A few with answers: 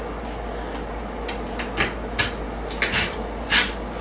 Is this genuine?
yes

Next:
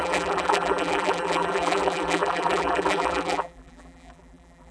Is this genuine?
no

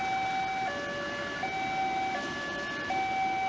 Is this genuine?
yes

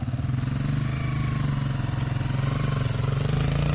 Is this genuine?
yes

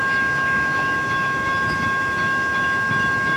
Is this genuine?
no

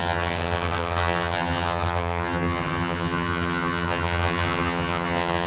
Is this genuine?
no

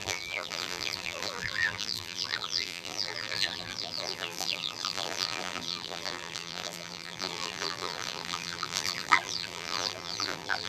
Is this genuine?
no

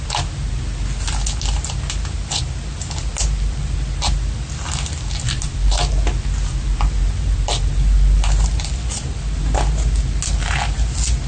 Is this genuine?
yes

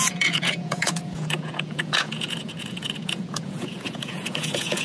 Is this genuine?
no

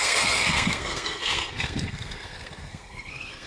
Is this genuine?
no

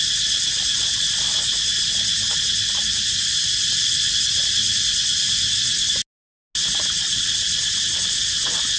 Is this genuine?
yes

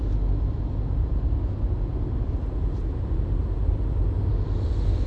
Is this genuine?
yes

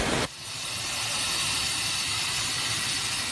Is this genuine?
yes